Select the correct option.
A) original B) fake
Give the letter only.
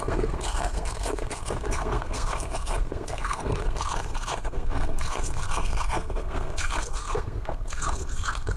B